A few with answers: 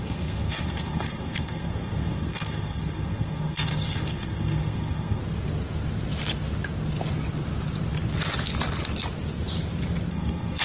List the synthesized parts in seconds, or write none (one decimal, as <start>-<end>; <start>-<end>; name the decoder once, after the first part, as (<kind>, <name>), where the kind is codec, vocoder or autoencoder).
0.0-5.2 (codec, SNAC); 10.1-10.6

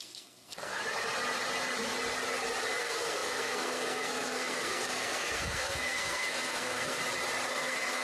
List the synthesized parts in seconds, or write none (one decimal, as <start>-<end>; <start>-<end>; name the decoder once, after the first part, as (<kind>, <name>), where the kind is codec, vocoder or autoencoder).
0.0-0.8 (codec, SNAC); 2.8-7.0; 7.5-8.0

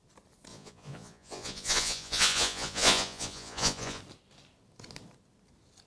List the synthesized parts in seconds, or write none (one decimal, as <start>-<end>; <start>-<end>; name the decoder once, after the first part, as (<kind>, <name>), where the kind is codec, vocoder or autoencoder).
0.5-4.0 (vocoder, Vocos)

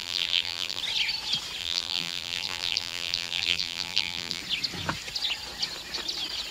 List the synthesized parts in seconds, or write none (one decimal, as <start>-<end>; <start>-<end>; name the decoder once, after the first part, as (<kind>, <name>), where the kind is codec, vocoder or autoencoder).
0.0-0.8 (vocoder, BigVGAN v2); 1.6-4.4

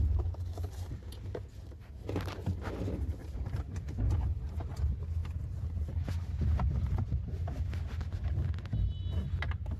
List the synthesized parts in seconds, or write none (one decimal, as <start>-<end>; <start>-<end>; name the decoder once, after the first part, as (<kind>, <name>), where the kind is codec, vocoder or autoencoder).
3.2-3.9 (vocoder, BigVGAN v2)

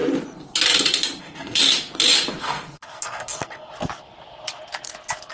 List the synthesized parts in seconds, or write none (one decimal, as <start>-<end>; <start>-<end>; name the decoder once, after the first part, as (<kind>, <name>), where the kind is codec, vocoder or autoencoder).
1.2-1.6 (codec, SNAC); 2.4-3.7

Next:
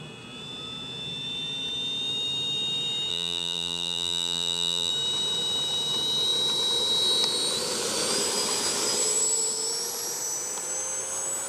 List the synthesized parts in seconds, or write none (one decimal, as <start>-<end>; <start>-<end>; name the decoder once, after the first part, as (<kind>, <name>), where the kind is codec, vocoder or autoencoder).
3.1-4.9 (vocoder, BigVGAN v2)

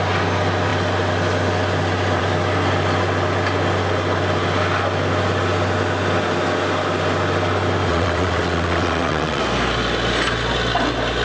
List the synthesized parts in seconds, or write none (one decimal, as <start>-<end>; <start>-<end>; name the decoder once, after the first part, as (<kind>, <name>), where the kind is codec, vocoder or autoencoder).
7.9-9.4 (vocoder, WaveNeXt)